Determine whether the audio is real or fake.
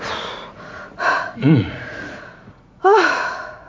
fake